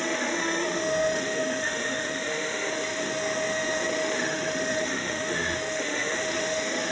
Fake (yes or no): yes